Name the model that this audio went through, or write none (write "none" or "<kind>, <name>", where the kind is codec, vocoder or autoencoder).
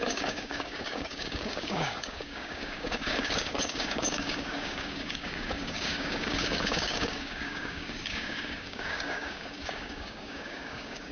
codec, DAC